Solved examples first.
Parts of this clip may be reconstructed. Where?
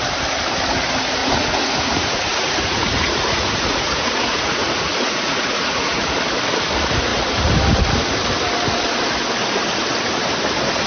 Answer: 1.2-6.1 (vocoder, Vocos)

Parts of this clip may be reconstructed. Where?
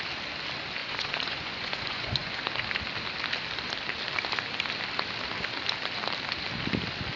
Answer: 0.8-2.4 (vocoder, Vocos)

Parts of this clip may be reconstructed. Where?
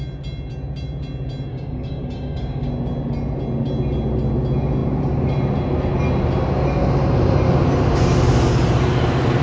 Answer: 1.5-2.7 (codec, DAC)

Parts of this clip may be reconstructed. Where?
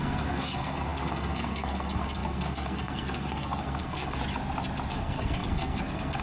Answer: 0.0-4.2 (codec, SNAC); 4.9-6.2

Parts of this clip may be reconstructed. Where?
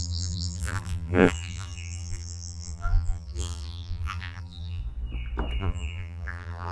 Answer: 0.0-4.8 (vocoder, BigVGAN v2); 5.6-6.7